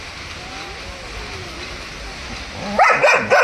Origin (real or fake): real